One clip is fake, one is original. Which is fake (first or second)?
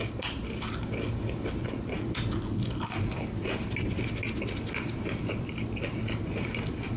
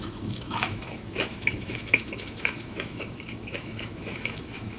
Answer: second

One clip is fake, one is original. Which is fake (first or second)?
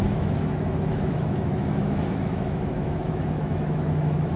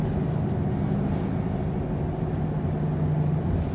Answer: first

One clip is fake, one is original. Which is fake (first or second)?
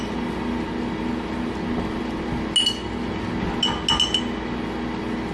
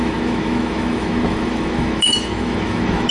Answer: second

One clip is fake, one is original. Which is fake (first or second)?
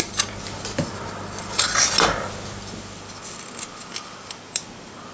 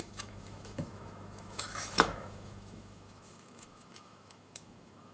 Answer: second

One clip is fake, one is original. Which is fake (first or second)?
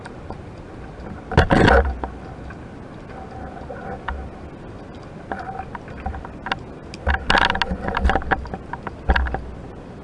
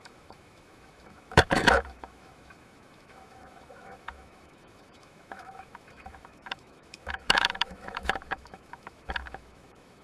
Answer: second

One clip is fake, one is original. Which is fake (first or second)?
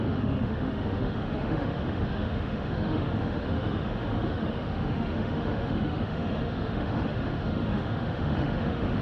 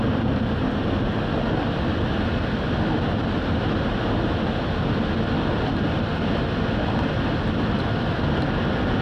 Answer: first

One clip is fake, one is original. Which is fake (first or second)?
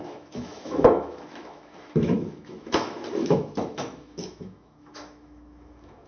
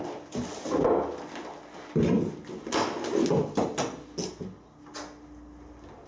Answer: first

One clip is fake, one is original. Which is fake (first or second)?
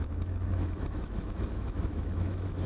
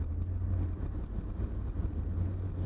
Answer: first